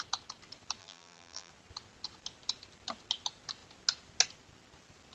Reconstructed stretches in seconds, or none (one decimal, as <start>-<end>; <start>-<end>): 0.8-1.5